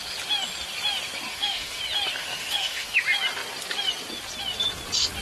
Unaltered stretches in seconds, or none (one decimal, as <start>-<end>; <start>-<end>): 0.0-1.3; 1.8-2.2; 3.0-5.2